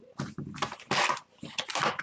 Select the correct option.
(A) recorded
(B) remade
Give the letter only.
A